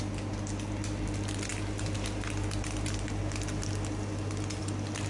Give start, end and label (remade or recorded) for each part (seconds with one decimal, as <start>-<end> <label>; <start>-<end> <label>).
0.0-5.1 recorded